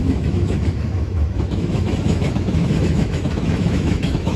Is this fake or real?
fake